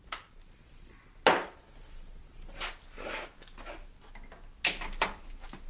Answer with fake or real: real